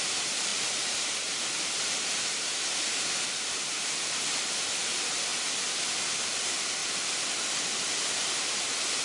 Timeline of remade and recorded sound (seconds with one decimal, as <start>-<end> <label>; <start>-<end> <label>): 0.0-5.3 remade; 5.3-6.2 recorded; 6.2-6.8 remade; 6.8-7.6 recorded; 7.6-9.0 remade